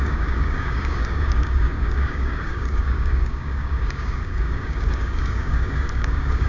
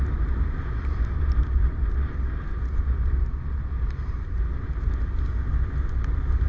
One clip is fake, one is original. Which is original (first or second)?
second